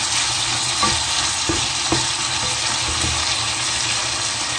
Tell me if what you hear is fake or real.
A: real